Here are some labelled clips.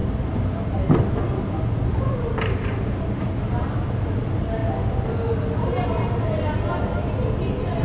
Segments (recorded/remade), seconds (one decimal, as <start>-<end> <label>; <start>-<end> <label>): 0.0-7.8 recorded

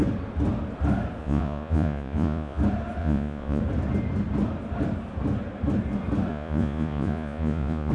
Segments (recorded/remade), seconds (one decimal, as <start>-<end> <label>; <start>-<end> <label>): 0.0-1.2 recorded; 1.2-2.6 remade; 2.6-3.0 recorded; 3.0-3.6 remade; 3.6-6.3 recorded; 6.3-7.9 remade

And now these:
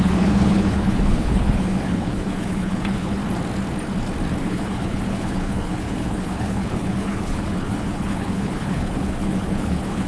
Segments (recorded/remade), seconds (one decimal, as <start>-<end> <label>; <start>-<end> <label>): 0.0-3.2 remade; 3.2-4.4 recorded; 4.4-10.1 remade